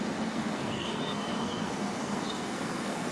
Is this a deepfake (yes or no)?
yes